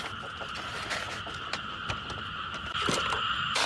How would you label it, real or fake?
fake